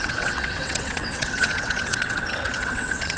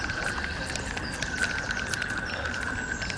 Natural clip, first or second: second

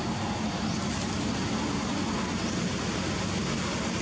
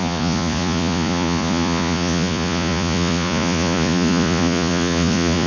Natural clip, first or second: first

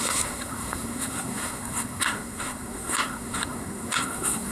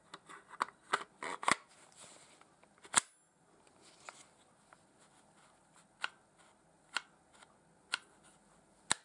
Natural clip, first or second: second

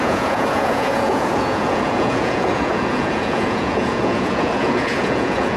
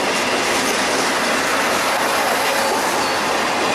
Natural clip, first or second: second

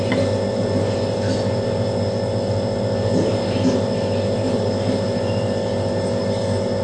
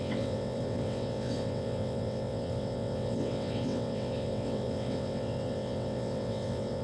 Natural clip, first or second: first